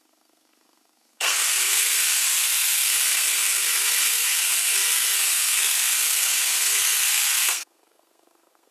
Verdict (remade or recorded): remade